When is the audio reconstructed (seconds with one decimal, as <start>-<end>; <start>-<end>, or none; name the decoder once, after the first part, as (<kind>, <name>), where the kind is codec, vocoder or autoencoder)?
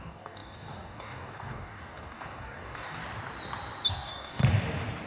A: 0.0-3.0 (codec, DAC); 3.9-4.4